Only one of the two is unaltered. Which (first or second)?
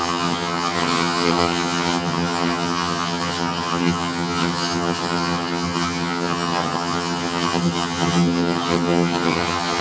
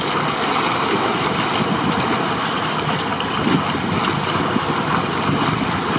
second